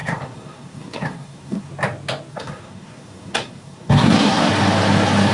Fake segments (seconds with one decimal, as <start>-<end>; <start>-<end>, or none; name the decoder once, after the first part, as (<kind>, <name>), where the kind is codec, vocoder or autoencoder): 0.0-1.7 (codec, SNAC); 2.3-4.5